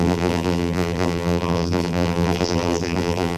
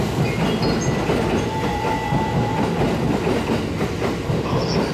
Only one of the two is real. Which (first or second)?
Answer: second